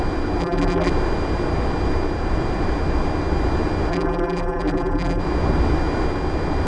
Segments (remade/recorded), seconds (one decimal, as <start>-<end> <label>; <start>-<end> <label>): 0.0-0.4 recorded; 0.4-0.9 remade; 0.9-3.9 recorded; 3.9-5.2 remade; 5.2-6.7 recorded

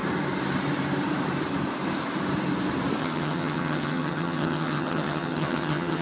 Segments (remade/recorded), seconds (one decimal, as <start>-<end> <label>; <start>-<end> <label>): 0.0-3.0 recorded; 3.0-6.0 remade

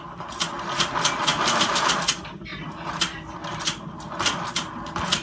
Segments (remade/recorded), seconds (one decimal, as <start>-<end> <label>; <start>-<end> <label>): 0.0-1.3 recorded; 1.3-1.9 remade; 1.9-2.5 recorded; 2.5-3.0 remade; 3.0-3.4 recorded; 3.4-4.0 remade; 4.0-5.2 recorded